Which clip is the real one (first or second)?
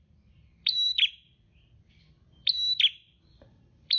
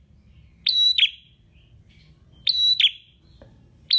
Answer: second